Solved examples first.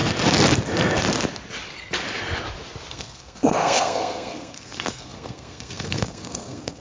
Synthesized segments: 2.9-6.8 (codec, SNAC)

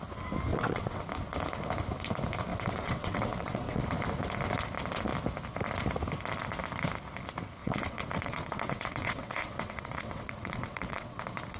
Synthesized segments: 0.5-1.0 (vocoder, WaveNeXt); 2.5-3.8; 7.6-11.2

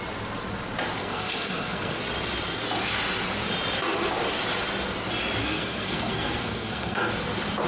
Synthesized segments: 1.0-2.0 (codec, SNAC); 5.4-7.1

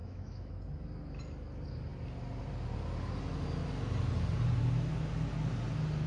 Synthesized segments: 0.0-0.6 (autoencoder, DAC-VAE)

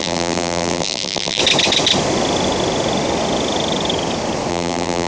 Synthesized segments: 0.0-1.4 (vocoder, BigVGAN v2); 4.5-5.1

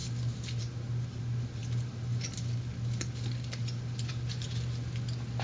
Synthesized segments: none